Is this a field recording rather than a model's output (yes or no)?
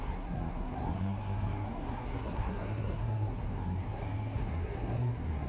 no